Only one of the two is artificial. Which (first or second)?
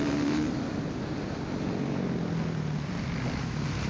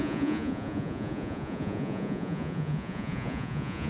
second